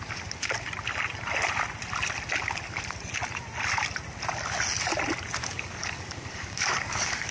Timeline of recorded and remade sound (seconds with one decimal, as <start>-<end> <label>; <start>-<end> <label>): 0.0-5.4 recorded; 5.4-7.3 remade